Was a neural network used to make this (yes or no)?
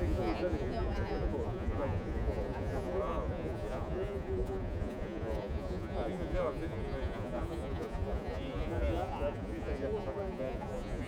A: yes